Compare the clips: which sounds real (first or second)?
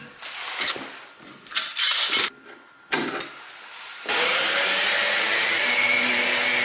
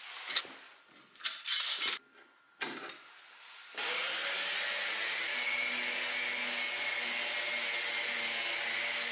second